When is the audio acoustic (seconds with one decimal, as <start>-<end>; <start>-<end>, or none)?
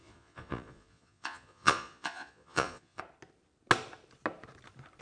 3.0-5.0